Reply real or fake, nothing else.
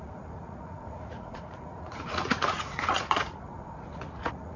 fake